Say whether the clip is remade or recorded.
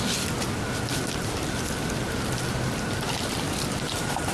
recorded